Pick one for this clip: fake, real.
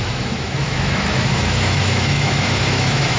fake